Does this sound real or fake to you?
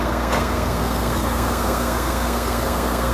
fake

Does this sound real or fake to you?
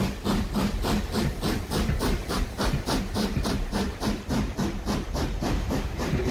fake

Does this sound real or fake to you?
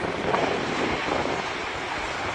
real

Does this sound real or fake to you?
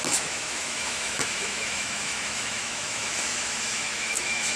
fake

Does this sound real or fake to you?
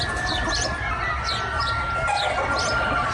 real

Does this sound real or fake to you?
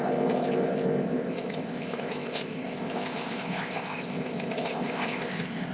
fake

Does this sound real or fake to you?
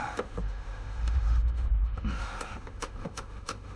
fake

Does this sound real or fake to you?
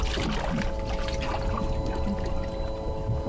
real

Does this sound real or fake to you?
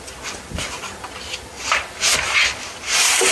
real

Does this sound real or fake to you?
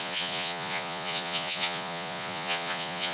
fake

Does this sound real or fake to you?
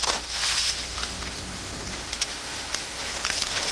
fake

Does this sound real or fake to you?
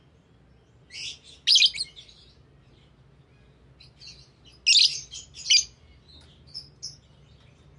real